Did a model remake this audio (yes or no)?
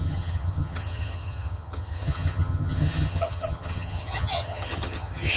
yes